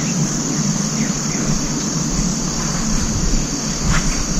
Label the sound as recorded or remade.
recorded